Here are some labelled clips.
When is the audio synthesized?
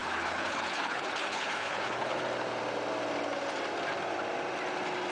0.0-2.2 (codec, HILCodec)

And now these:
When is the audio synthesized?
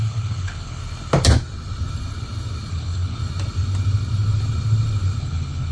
0.0-0.8 (codec, HILCodec); 2.7-3.2; 5.2-5.7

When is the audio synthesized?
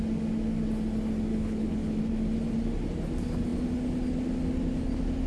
1.3-2.0 (codec, HILCodec)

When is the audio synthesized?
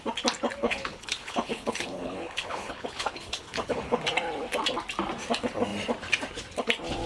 0.6-4.0 (codec, HILCodec)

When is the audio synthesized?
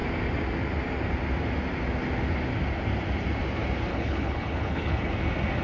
3.9-5.1 (codec, HILCodec)